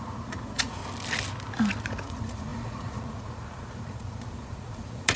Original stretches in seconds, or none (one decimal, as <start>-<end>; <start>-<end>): 0.8-1.8